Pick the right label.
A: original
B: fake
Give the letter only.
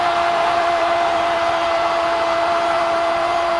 B